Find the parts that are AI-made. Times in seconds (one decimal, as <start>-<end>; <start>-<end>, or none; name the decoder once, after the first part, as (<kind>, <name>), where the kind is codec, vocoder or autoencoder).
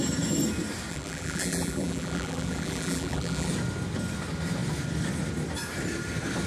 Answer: 0.9-3.5 (vocoder, BigVGAN v2)